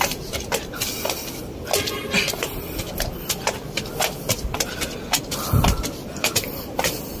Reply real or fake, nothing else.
real